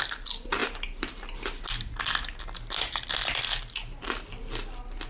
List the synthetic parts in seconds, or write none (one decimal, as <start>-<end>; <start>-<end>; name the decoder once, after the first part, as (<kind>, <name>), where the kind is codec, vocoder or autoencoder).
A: none